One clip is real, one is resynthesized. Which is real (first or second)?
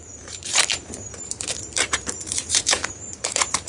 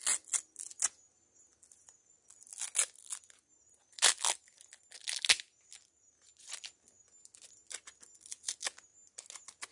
second